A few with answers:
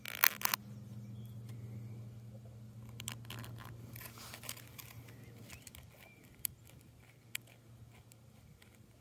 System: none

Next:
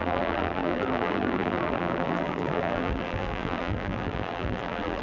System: vocoder, BigVGAN v2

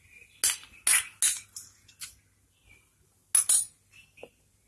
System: none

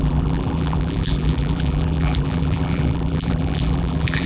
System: vocoder, BigVGAN v2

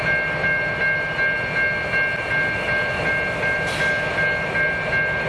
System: none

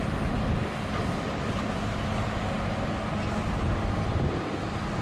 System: none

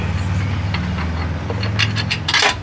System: none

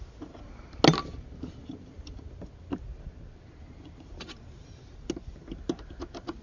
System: none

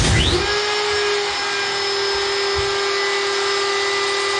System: none